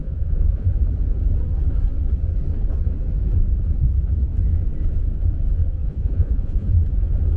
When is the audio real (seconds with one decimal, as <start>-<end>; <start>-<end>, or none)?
0.7-5.8; 6.7-7.4